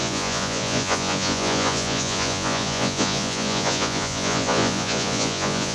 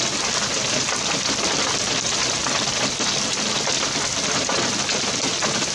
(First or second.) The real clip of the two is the second